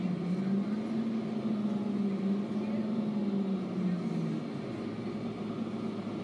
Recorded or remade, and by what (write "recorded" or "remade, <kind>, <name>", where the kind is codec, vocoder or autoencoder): recorded